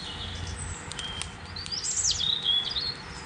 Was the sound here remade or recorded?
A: recorded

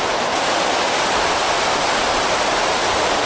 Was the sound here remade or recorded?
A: recorded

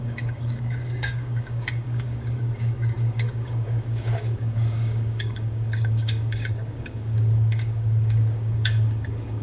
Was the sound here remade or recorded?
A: remade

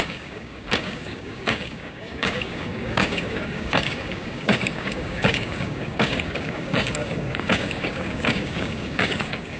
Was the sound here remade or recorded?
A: remade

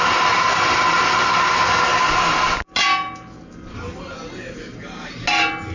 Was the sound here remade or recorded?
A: recorded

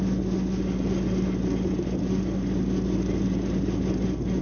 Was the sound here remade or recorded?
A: recorded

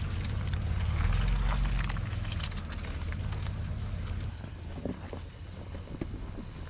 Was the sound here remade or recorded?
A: recorded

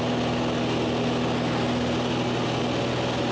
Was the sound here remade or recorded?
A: recorded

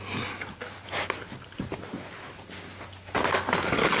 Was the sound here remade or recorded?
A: recorded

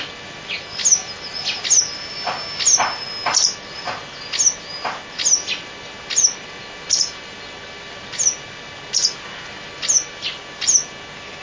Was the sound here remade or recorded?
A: recorded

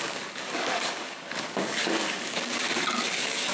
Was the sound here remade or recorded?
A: remade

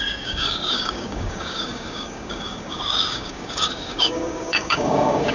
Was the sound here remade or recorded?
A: remade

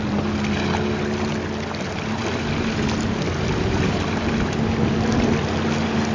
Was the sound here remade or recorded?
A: recorded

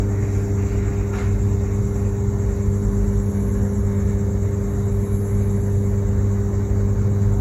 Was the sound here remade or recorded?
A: recorded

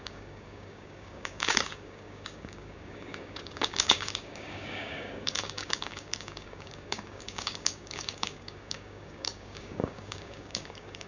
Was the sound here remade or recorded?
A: remade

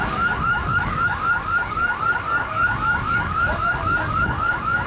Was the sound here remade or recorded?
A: remade